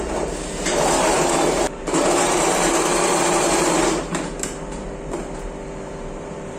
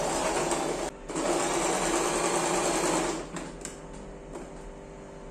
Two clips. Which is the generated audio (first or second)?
first